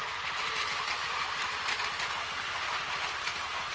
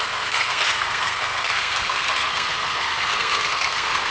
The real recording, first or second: first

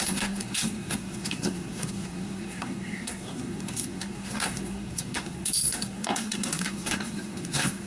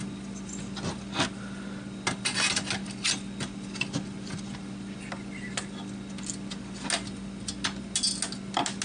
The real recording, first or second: second